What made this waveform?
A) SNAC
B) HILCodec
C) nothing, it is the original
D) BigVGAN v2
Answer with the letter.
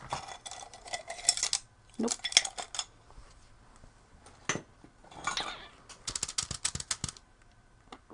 C